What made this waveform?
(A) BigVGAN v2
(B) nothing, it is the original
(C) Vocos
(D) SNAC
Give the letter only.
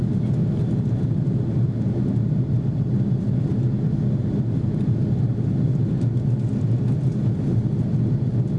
B